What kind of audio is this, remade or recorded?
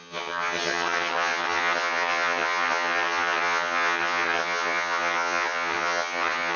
remade